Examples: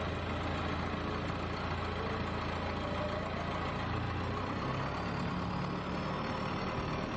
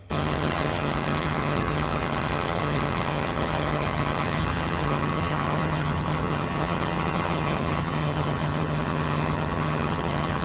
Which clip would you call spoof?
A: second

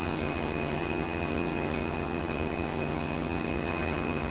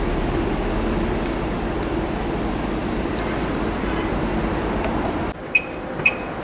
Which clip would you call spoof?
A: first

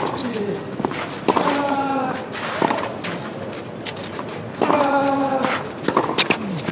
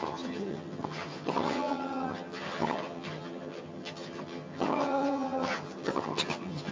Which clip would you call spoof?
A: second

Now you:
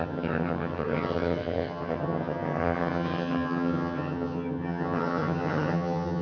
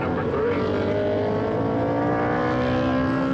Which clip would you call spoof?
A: first